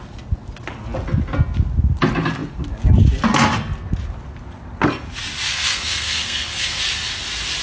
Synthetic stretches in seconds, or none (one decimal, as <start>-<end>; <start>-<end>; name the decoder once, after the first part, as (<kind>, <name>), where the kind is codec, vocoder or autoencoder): 5.5-6.8 (codec, SNAC)